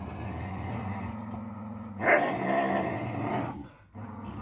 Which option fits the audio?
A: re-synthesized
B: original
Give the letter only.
B